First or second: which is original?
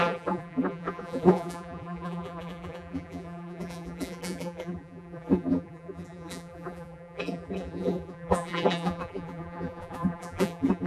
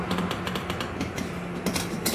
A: second